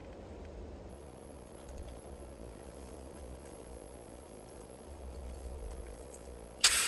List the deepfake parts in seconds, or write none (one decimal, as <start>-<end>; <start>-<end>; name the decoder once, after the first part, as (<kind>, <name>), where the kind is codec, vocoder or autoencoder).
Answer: 0.9-6.9 (vocoder, Vocos)